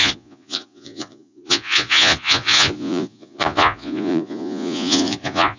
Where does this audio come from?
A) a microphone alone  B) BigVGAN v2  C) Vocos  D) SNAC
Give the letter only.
C